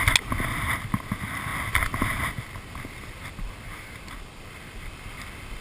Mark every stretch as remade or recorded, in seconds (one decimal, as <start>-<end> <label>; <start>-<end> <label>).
0.0-5.6 recorded